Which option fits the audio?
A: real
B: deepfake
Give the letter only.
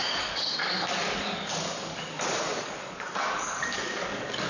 B